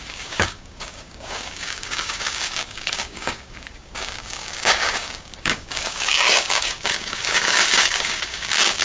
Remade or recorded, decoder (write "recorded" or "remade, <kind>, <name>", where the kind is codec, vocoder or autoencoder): remade, codec, DAC